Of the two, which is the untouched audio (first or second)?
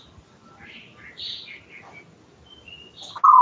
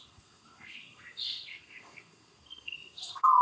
first